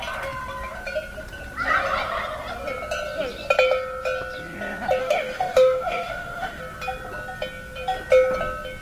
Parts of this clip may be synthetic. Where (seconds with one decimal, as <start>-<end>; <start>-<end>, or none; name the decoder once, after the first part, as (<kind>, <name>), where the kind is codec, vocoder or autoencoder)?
5.0-6.6 (autoencoder, DAC-VAE)